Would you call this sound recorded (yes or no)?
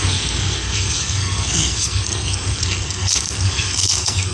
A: no